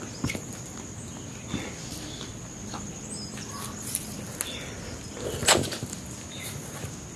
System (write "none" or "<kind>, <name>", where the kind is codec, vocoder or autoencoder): none